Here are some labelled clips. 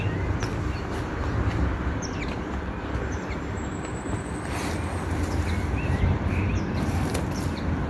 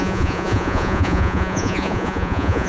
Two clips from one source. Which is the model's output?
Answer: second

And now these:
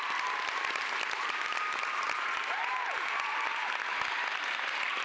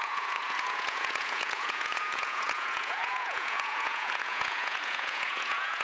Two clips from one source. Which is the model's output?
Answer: second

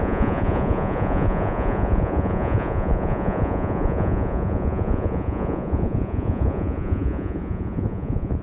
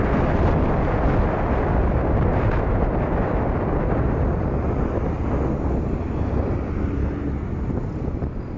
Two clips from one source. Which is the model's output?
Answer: first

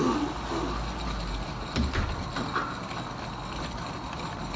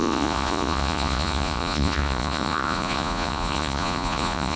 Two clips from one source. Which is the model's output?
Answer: second